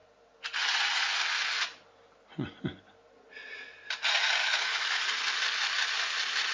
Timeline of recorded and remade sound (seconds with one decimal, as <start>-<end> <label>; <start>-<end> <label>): 0.0-4.4 recorded; 4.4-5.0 remade; 5.0-6.5 recorded